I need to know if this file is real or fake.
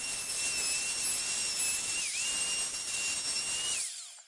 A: real